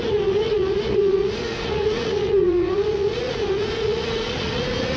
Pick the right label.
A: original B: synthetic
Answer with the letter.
B